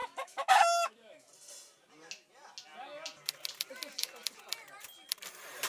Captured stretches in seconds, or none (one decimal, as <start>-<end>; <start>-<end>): 1.3-5.7